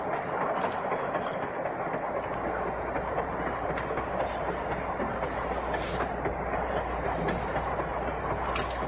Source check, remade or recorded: recorded